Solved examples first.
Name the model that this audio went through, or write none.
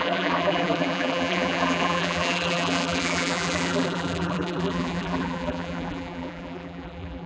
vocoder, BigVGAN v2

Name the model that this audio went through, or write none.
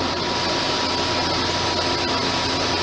none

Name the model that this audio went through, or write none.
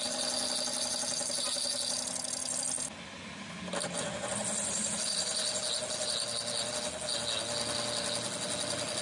none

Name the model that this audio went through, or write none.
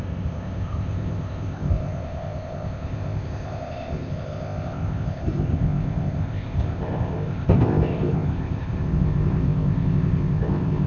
codec, ZipCodec